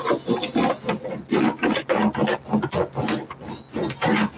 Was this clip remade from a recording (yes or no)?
no